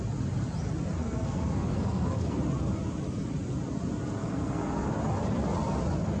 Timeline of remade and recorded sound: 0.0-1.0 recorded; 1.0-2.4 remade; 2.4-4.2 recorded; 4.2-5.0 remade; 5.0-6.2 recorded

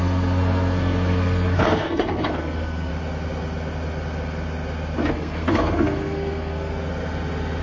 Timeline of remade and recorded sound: 0.0-2.9 remade; 2.9-5.1 recorded; 5.1-6.7 remade; 6.7-7.6 recorded

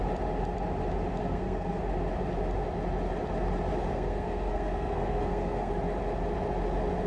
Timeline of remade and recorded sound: 0.0-1.2 recorded; 1.2-1.8 remade; 1.8-3.9 recorded; 3.9-5.7 remade; 5.7-7.1 recorded

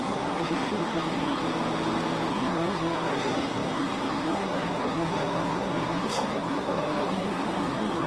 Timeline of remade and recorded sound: 0.0-1.4 remade; 1.4-2.3 recorded; 2.3-8.1 remade

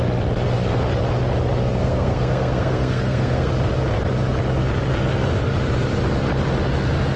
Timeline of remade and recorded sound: 0.0-1.8 recorded; 1.8-3.5 remade; 3.5-7.2 recorded

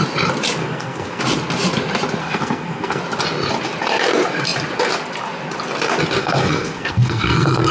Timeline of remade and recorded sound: 0.0-0.6 recorded; 0.6-1.2 remade; 1.2-2.2 recorded; 2.2-3.0 remade; 3.0-6.2 recorded; 6.2-7.7 remade

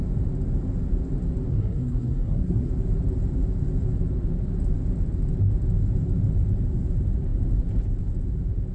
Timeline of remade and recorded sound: 0.0-1.5 recorded; 1.5-2.7 remade; 2.7-8.7 recorded

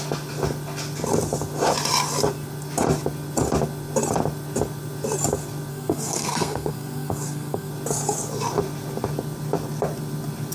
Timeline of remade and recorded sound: 0.0-5.7 recorded; 5.7-7.7 remade; 7.7-10.5 recorded